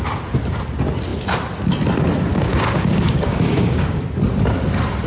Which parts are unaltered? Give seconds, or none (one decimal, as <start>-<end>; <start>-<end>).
0.0-2.3; 4.0-5.1

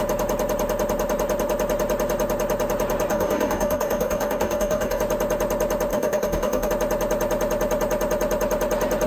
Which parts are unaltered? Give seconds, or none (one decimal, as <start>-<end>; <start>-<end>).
0.0-3.1; 5.0-5.9; 6.7-9.1

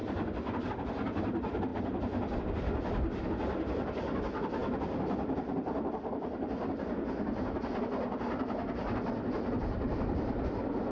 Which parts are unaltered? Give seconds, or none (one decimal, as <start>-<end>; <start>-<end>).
0.0-10.9

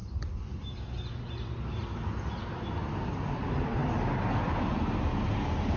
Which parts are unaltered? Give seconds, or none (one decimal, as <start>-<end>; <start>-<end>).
0.0-5.8

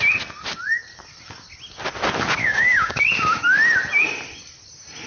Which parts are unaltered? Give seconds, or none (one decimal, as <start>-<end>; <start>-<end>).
0.0-2.4; 3.1-5.1

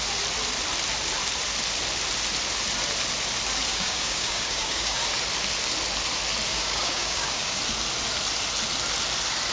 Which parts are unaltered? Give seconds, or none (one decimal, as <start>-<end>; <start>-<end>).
0.0-3.7; 5.0-6.5; 7.6-9.5